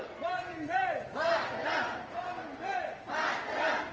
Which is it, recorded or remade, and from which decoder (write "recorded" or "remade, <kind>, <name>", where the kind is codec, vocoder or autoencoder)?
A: recorded